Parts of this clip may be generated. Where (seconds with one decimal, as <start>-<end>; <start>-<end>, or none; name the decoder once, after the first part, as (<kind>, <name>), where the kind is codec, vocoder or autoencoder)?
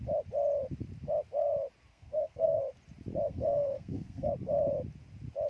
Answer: 1.9-2.6 (codec, SNAC); 3.3-4.3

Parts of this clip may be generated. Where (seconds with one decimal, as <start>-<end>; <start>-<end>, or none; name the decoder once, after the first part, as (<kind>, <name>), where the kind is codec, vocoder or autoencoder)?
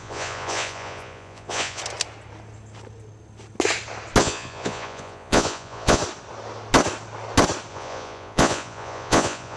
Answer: 0.0-1.8 (vocoder, Vocos); 4.2-6.0; 7.7-9.6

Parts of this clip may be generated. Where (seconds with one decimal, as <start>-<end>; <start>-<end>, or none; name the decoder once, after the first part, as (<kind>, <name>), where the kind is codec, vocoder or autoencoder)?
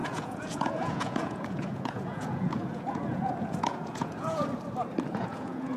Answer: 0.0-4.4 (vocoder, Vocos); 5.1-5.8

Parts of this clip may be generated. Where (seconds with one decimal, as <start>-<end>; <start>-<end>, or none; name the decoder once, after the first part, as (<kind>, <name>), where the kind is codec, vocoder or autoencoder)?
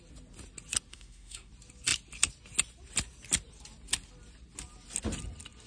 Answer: 0.9-1.5 (autoencoder, DAC-VAE)